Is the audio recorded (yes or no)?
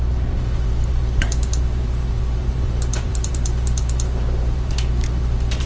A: no